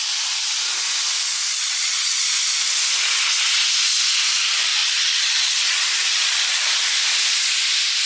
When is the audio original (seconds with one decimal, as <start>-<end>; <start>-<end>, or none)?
0.0-1.5; 2.3-4.8; 6.8-8.1